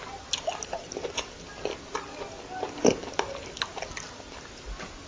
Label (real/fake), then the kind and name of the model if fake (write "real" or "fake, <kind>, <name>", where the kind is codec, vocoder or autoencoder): real